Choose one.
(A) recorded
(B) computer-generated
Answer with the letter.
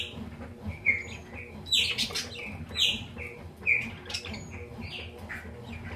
A